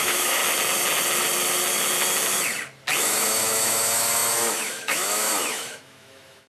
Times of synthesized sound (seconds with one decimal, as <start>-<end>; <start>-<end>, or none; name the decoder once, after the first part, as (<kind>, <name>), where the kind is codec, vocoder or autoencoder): 0.0-0.4 (autoencoder, DAC-VAE); 3.0-6.5